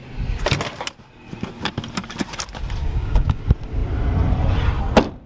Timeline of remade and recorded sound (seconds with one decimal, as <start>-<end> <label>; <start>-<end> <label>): 0.0-2.8 recorded; 2.8-3.4 remade; 3.4-5.3 recorded